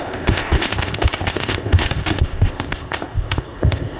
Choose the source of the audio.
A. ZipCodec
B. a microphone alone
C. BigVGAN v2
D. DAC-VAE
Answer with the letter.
A